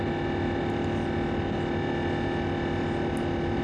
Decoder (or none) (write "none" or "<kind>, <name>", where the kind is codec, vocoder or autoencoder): none